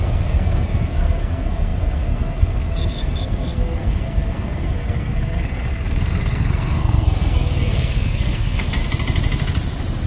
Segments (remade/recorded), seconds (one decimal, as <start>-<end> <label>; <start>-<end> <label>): 0.0-8.8 remade; 8.8-10.1 recorded